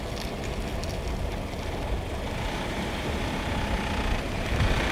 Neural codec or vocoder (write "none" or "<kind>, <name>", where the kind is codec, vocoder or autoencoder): none